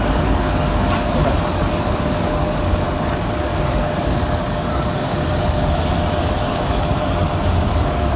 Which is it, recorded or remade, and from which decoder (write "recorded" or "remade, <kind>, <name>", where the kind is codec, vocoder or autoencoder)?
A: remade, codec, DAC